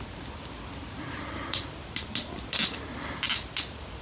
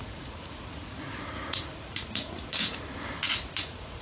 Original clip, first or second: first